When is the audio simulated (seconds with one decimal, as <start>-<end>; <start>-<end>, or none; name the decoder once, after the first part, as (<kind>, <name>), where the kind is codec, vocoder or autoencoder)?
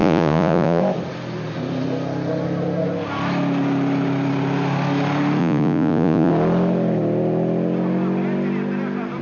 0.0-0.8 (vocoder, Vocos); 5.4-6.3